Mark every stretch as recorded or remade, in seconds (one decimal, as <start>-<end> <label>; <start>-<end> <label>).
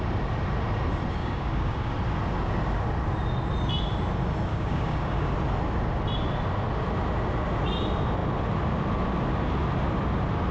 0.0-1.2 recorded; 1.2-1.9 remade; 1.9-4.5 recorded; 4.5-5.3 remade; 5.3-10.5 recorded